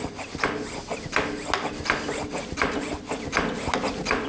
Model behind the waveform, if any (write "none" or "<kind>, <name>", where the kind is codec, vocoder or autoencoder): none